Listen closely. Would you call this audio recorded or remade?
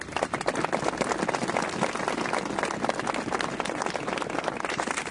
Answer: recorded